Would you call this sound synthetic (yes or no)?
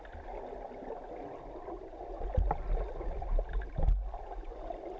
no